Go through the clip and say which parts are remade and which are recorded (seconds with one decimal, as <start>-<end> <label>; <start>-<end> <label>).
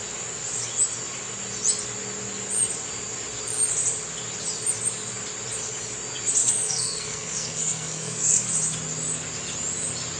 0.0-6.4 recorded; 6.4-8.5 remade; 8.5-10.2 recorded